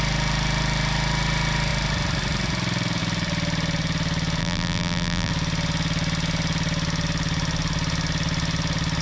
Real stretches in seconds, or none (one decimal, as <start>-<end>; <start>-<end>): 0.0-4.4; 5.3-9.0